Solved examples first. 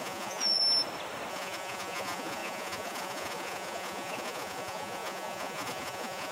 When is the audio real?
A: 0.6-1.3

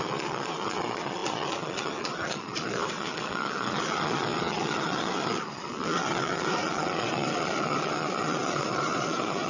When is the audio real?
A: none

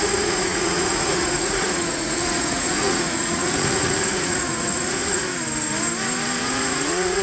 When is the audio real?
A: 5.3-6.4